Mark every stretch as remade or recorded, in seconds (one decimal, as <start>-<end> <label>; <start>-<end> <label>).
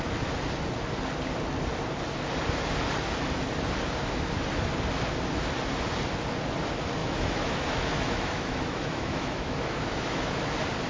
0.0-7.0 recorded; 7.0-10.5 remade; 10.5-10.9 recorded